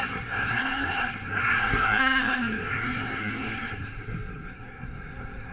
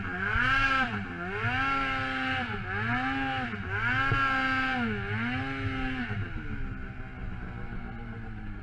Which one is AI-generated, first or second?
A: first